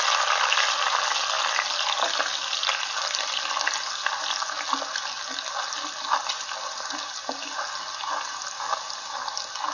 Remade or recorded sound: recorded